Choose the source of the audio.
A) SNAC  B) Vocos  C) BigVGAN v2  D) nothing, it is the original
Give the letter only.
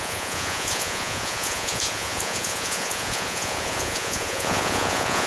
B